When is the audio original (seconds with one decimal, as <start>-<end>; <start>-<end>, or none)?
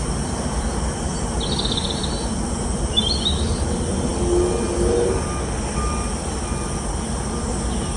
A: 0.0-8.0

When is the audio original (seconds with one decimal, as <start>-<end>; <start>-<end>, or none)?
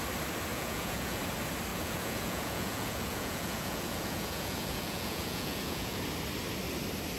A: 0.0-0.5; 1.2-1.7; 6.0-7.2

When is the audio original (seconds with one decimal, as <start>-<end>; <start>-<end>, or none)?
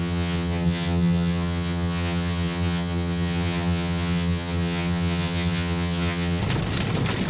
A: 6.4-7.3